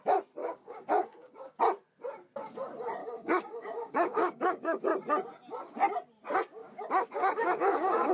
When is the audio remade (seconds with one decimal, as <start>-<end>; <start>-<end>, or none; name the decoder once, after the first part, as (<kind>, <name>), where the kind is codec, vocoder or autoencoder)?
0.4-1.6 (codec, DAC); 3.0-4.8; 6.6-8.1